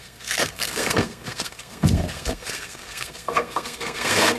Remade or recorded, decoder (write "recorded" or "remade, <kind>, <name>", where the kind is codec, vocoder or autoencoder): remade, codec, SNAC